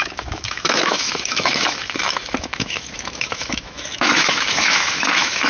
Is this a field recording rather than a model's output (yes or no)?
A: no